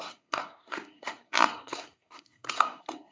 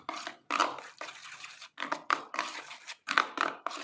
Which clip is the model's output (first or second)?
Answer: first